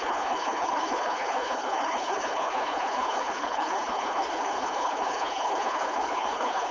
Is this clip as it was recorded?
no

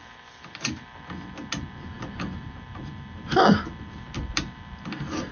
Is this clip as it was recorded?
yes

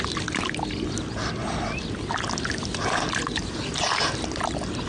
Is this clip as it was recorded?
yes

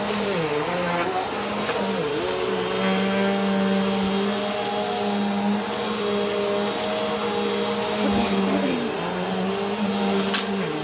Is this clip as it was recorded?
yes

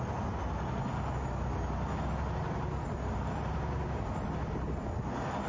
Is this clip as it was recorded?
yes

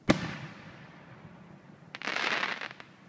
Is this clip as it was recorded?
yes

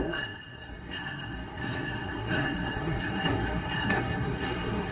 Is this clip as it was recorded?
no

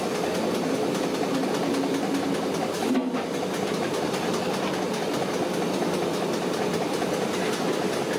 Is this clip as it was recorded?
yes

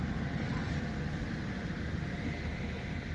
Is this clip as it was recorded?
yes